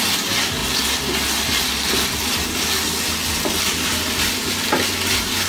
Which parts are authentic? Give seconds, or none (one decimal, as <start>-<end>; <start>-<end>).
0.0-5.5